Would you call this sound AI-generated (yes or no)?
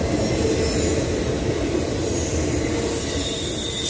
no